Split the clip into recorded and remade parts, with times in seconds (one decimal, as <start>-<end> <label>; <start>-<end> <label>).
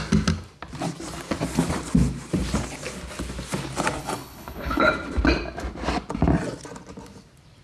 0.0-4.0 recorded; 4.0-4.9 remade; 4.9-7.6 recorded